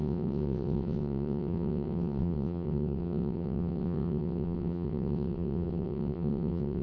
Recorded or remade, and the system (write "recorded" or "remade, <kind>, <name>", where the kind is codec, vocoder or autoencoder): remade, vocoder, WaveNeXt